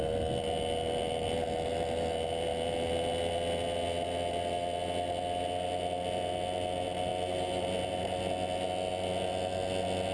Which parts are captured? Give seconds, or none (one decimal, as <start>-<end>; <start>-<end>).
0.0-10.1